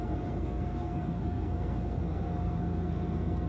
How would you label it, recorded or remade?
remade